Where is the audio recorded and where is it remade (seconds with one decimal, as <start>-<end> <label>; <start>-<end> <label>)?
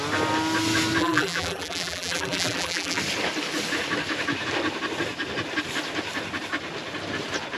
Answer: 0.0-1.0 recorded; 1.0-3.0 remade; 3.0-7.6 recorded